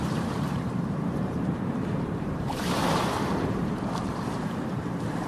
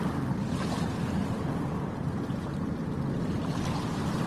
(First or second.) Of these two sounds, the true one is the second